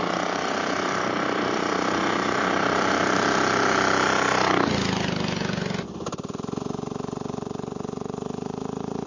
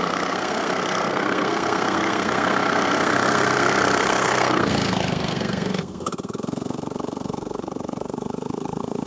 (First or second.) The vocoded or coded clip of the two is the second